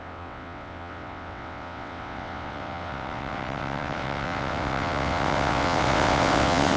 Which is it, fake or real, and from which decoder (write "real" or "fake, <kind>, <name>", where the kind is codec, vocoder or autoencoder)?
fake, vocoder, WaveNeXt